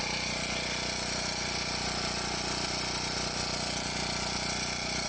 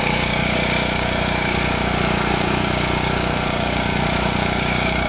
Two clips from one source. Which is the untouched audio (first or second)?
first